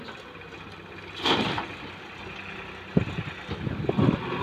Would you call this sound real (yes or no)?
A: yes